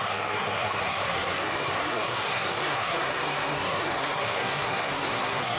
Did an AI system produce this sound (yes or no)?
yes